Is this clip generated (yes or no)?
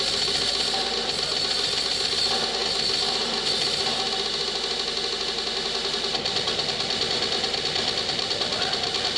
no